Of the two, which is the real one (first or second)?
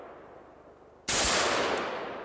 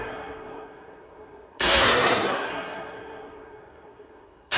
first